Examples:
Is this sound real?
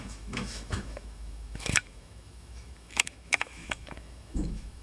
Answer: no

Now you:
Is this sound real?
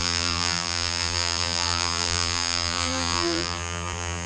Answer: no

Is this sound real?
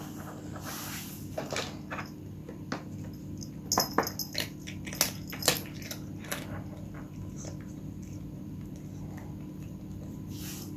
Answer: yes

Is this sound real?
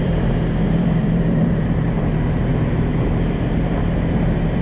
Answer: no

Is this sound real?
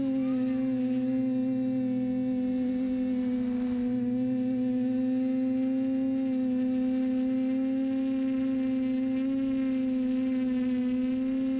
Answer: yes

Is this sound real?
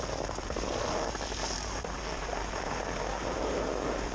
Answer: yes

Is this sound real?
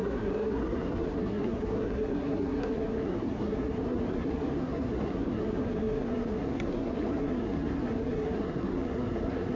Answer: no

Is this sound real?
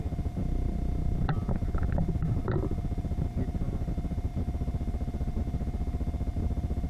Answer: yes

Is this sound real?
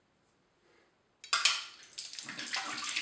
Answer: yes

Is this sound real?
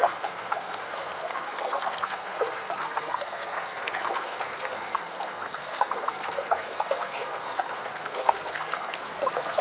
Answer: no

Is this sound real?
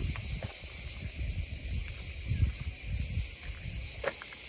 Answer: yes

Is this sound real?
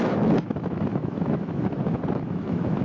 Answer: no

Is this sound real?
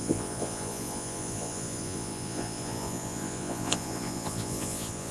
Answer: no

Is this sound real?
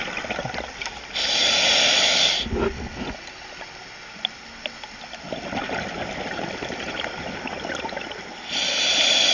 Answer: yes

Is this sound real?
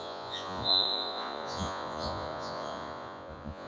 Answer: no